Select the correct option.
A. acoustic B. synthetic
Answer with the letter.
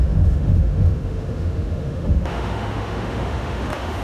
B